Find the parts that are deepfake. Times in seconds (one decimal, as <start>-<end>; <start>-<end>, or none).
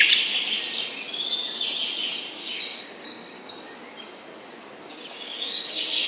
2.4-3.5; 5.1-6.1